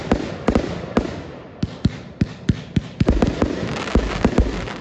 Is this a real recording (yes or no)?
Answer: yes